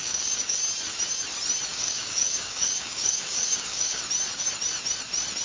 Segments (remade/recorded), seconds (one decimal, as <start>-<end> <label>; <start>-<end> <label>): 0.0-0.6 remade; 0.6-1.7 recorded; 1.7-4.0 remade; 4.0-5.4 recorded